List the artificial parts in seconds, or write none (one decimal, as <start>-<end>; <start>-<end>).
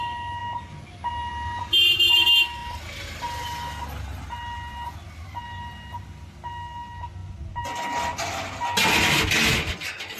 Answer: none